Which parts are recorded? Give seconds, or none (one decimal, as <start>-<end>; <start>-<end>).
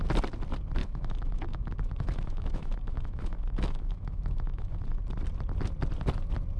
0.0-0.8; 4.8-6.6